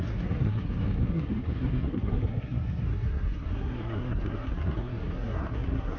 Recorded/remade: remade